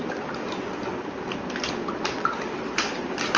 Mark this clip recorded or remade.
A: recorded